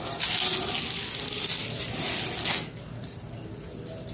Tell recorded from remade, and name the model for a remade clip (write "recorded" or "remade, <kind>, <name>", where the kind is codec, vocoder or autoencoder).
recorded